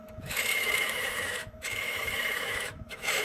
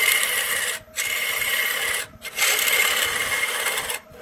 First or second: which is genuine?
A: second